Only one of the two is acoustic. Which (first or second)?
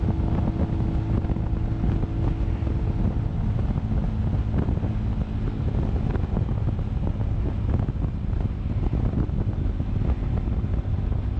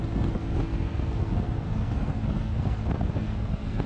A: first